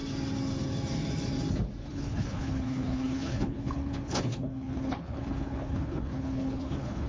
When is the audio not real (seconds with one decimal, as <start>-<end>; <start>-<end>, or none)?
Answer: 1.9-7.1